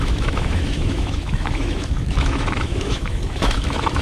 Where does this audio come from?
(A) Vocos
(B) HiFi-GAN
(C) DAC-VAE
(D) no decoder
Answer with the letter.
C